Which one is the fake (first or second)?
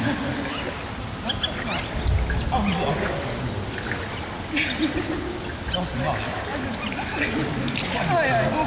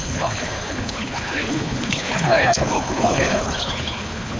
second